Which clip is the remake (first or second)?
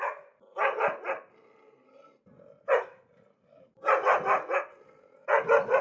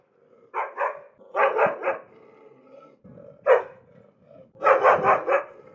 second